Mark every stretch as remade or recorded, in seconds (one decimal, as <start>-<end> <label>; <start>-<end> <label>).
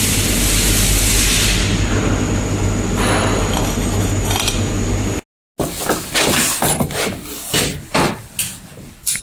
0.0-9.2 recorded